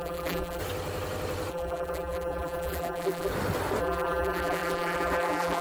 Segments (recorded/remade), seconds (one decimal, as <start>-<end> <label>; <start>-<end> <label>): 0.0-0.6 remade; 0.6-1.5 recorded; 1.5-3.3 remade; 3.3-3.8 recorded; 3.8-5.6 remade